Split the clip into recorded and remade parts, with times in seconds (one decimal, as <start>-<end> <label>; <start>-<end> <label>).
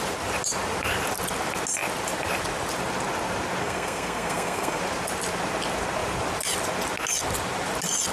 0.0-3.6 recorded; 3.6-4.8 remade; 4.8-8.1 recorded